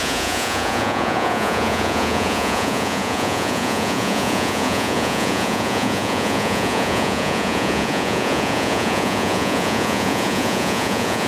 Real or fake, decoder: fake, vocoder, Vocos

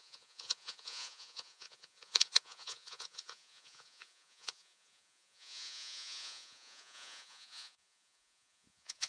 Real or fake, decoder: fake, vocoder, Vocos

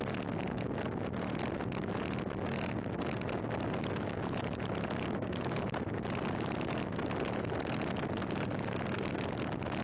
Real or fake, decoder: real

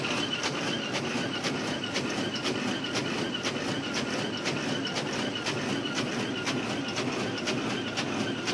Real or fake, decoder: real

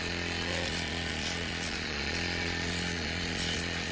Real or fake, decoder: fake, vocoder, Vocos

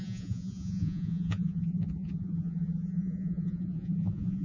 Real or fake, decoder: fake, vocoder, Vocos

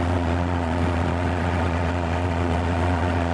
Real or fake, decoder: fake, vocoder, Vocos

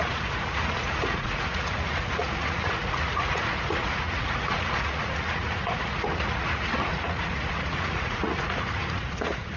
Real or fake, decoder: fake, vocoder, Vocos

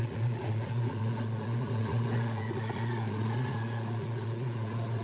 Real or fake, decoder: fake, vocoder, Vocos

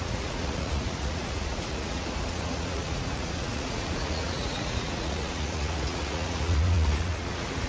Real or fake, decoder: fake, vocoder, Vocos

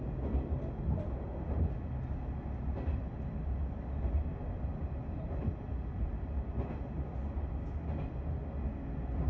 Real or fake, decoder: real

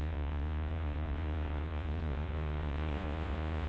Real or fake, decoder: fake, vocoder, Vocos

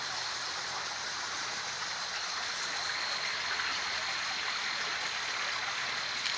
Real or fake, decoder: real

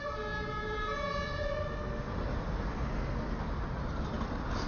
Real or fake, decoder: real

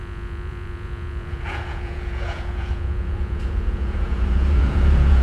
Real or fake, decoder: fake, vocoder, Vocos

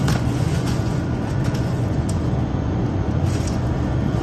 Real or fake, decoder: fake, vocoder, Vocos